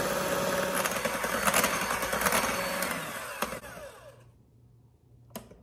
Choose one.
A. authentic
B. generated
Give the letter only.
A